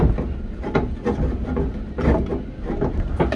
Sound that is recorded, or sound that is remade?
recorded